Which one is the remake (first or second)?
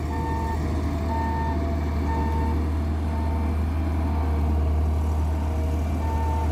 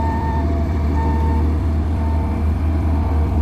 second